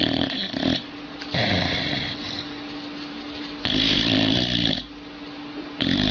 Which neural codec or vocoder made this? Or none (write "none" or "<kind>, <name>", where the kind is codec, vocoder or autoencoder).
none